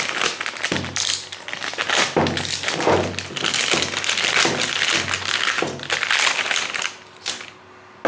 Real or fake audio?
real